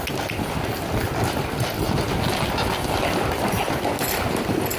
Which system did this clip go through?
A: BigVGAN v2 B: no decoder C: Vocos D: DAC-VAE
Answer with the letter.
B